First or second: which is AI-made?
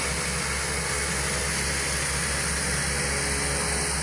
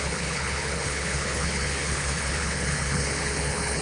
second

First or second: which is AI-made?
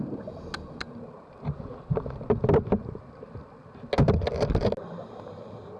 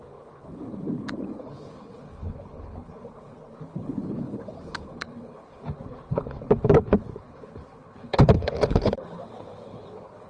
second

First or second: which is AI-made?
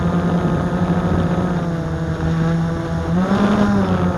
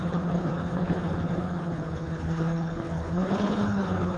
second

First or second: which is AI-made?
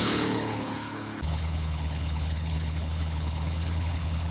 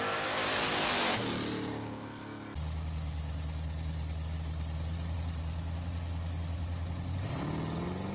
first